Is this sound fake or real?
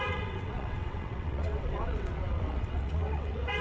fake